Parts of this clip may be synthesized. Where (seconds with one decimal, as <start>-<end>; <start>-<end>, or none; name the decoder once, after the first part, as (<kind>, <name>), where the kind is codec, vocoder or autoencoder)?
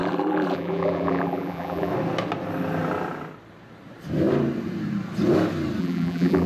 0.0-1.9 (vocoder, BigVGAN v2); 5.8-6.5